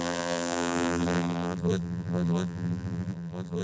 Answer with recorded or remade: remade